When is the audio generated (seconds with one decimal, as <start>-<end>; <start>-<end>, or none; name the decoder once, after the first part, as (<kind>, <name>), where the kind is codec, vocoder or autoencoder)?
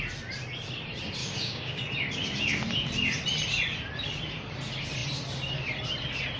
1.2-1.8 (codec, DAC)